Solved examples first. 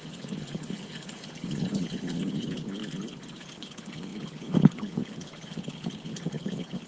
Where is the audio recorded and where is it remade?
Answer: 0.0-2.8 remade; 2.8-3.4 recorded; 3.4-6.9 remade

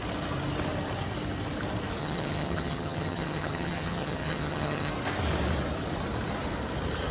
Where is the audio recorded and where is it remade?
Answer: 0.0-2.0 recorded; 2.0-4.9 remade; 4.9-7.1 recorded

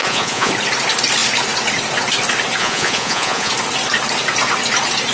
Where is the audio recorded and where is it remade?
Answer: 0.0-0.5 remade; 0.5-2.6 recorded; 2.6-3.5 remade; 3.5-5.1 recorded